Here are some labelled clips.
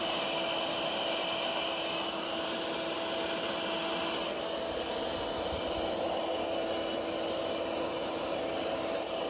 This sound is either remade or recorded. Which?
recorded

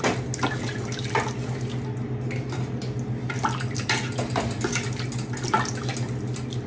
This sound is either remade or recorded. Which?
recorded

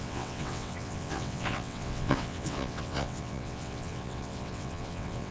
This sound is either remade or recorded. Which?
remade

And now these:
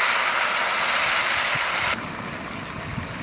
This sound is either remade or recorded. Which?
recorded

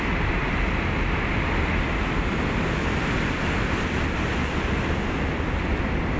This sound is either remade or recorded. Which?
recorded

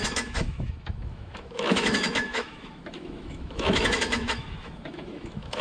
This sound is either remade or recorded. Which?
remade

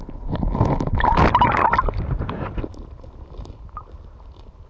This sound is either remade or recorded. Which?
recorded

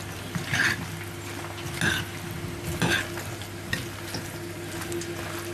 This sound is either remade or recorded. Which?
recorded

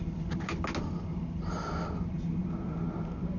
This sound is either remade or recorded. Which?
recorded